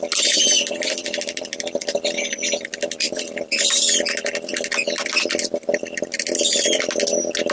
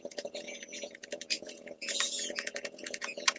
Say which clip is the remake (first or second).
second